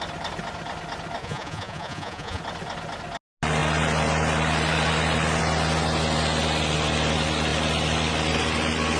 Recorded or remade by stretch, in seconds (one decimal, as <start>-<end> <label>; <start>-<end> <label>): 0.0-1.2 recorded; 1.2-2.4 remade; 2.4-9.0 recorded

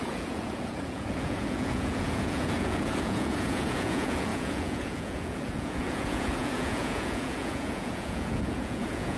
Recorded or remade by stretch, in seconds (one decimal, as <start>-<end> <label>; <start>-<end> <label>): 0.0-9.2 remade

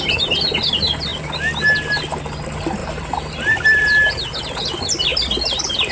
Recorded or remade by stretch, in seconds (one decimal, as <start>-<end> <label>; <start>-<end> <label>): 0.0-2.8 recorded; 2.8-4.1 remade; 4.1-5.1 recorded; 5.1-5.9 remade

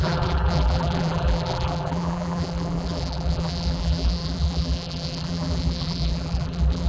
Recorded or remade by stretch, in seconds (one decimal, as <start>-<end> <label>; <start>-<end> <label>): 0.0-6.9 remade

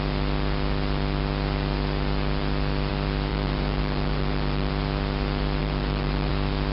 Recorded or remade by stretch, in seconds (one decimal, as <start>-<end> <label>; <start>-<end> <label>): 0.0-3.3 recorded; 3.3-4.7 remade; 4.7-5.6 recorded; 5.6-6.3 remade; 6.3-6.7 recorded